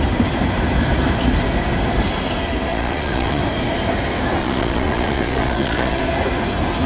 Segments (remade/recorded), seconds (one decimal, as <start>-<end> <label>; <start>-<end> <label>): 0.0-2.7 recorded; 2.7-3.4 remade; 3.4-4.4 recorded; 4.4-6.0 remade; 6.0-6.9 recorded